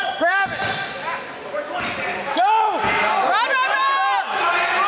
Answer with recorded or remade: recorded